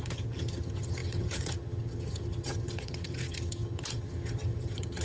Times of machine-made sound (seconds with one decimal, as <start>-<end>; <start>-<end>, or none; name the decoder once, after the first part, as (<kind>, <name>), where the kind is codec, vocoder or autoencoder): 0.0-5.0 (vocoder, HiFi-GAN)